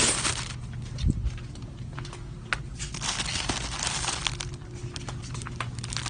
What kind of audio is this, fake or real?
real